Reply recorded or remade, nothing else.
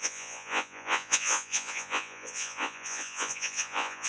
remade